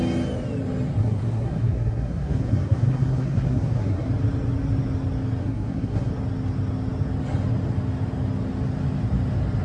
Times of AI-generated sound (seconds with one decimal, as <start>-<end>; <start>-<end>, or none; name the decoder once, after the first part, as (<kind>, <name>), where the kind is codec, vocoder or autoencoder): 1.0-4.1 (codec, SNAC); 5.4-6.1